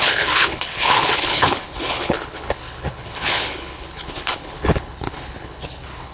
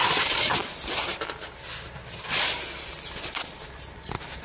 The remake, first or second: first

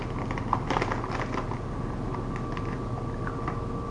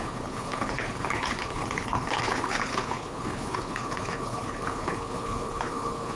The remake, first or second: second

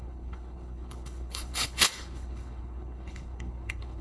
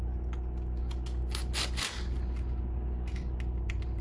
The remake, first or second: first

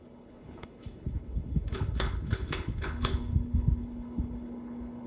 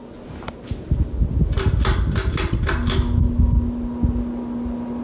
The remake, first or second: first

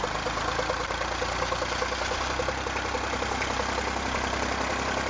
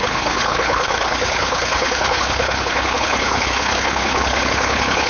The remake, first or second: second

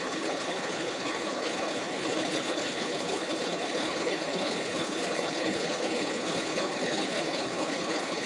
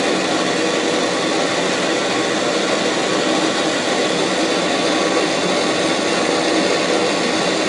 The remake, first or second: first